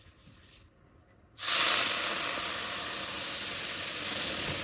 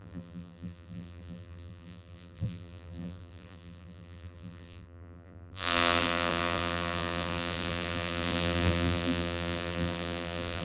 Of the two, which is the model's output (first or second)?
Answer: second